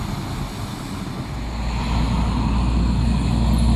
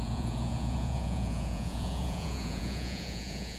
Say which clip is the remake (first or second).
second